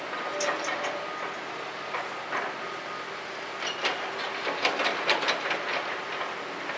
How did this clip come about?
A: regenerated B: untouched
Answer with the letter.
B